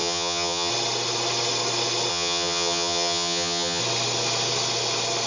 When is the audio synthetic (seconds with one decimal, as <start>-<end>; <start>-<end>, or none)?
0.0-0.7; 2.1-3.8